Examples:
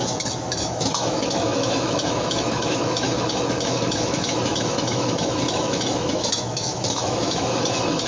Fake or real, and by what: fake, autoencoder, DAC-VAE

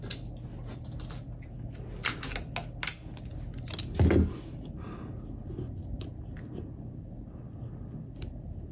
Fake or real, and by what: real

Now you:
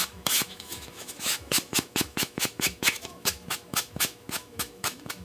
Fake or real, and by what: fake, autoencoder, DAC-VAE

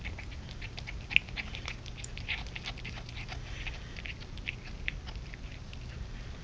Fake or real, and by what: real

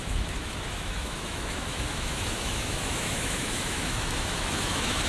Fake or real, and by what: fake, autoencoder, DAC-VAE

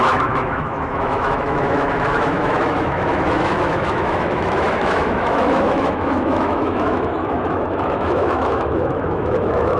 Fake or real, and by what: fake, autoencoder, DAC-VAE